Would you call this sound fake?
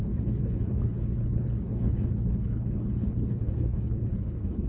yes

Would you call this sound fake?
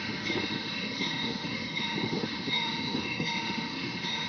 yes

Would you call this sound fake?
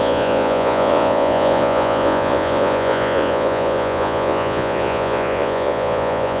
yes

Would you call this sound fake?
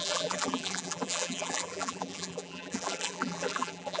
yes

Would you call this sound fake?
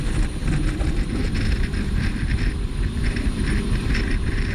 no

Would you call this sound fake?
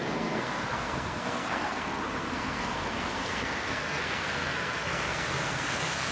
yes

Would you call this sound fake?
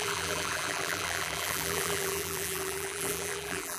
yes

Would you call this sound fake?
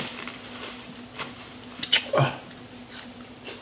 no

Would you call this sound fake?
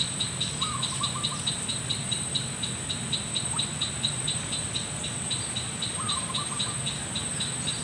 no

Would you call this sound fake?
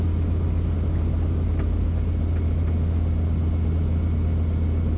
no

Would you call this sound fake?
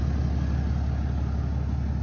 no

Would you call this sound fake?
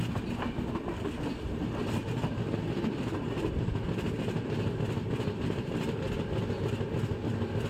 no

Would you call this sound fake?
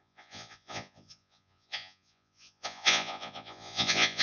yes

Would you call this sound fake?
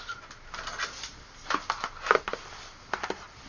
no